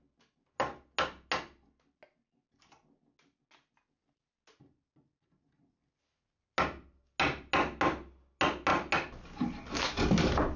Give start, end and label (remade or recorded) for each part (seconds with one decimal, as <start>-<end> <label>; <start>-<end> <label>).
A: 0.0-10.6 recorded